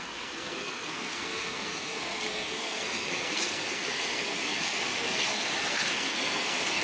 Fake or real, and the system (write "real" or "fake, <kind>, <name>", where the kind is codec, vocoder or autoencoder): fake, codec, SNAC